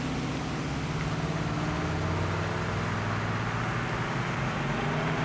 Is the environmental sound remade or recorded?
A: recorded